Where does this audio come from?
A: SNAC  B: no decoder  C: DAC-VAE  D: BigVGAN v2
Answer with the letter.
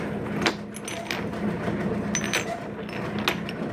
B